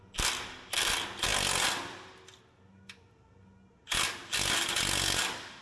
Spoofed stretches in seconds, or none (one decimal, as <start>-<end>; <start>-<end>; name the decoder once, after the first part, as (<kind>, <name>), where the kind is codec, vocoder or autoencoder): none

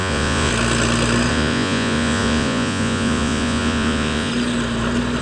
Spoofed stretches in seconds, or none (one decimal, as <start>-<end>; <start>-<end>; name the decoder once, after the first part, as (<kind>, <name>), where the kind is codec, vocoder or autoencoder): 0.0-0.5 (vocoder, Vocos); 1.3-4.3

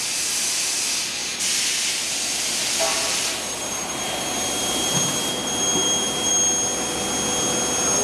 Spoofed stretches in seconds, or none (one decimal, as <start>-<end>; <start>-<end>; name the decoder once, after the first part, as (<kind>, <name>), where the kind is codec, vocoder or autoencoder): 2.9-6.3 (vocoder, BigVGAN v2)